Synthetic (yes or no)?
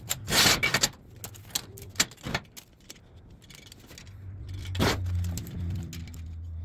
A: no